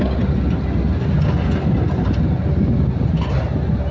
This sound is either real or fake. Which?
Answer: real